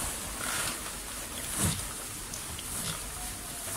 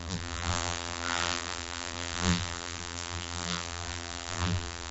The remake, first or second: second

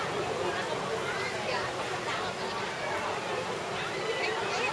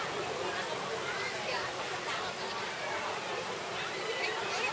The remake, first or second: second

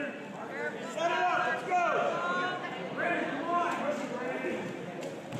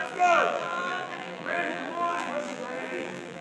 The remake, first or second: second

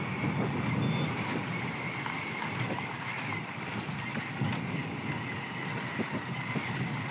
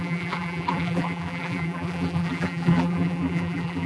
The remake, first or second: second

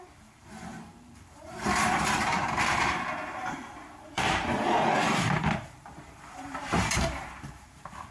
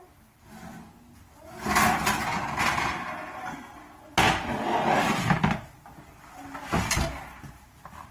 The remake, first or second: first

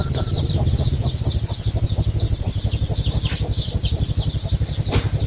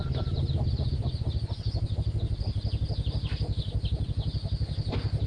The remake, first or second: first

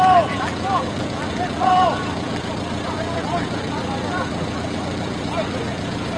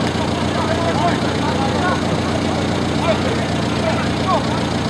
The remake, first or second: first